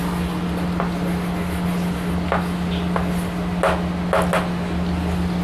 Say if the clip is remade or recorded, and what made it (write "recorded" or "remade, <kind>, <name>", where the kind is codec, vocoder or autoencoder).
recorded